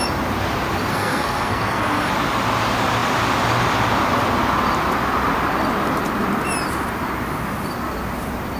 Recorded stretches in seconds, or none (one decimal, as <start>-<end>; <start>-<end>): 0.0-0.9; 2.1-8.6